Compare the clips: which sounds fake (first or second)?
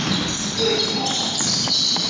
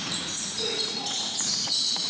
second